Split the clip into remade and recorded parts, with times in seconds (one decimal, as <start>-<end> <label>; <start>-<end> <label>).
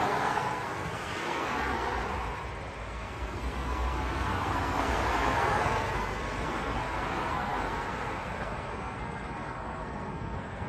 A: 0.0-2.0 remade; 2.0-2.8 recorded; 2.8-10.7 remade